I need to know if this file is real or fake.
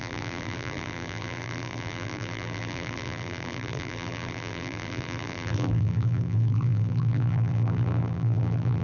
fake